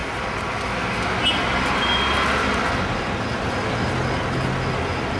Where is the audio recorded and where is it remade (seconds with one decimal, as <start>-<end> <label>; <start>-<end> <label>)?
0.0-5.2 recorded